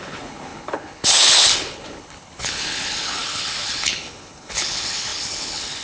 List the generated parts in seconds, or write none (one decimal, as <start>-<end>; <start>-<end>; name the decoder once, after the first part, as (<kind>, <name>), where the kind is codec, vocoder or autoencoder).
0.0-5.8 (codec, HILCodec)